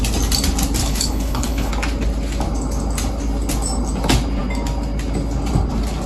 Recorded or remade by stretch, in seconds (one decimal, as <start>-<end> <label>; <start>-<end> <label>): 0.0-0.8 recorded; 0.8-1.7 remade; 1.7-6.1 recorded